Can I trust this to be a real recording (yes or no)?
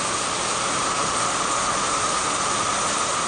yes